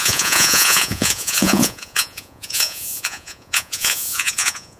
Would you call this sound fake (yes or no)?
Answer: yes